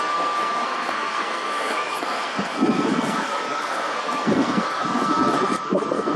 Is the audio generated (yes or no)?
yes